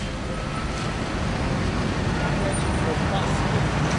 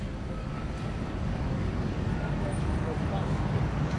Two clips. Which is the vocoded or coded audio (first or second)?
second